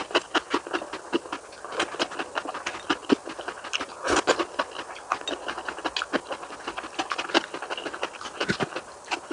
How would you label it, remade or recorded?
recorded